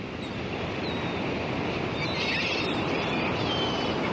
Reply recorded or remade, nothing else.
recorded